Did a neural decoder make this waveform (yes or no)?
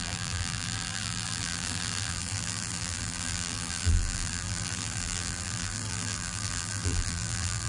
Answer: yes